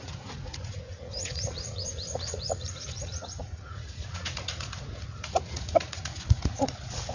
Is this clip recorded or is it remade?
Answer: remade